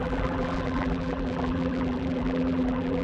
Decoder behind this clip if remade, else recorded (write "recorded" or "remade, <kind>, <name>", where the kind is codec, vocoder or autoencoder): remade, vocoder, BigVGAN v2